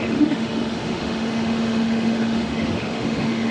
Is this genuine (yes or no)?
no